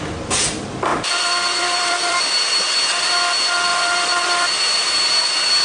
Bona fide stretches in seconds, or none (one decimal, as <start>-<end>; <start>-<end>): 0.0-0.9; 2.6-3.7